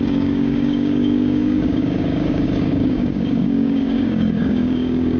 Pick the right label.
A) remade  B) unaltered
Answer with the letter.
A